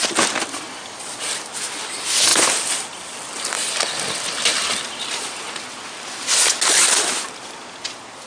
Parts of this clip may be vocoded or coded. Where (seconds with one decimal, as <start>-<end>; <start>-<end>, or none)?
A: none